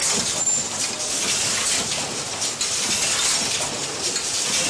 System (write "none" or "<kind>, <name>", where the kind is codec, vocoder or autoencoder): none